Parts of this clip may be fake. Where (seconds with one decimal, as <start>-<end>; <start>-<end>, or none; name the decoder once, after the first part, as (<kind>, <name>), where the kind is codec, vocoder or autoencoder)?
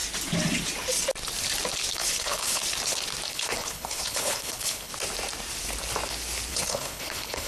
1.9-2.6 (codec, HILCodec); 3.3-4.9; 6.5-7.5